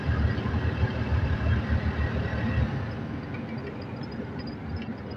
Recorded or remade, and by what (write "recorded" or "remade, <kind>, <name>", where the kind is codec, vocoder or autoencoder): recorded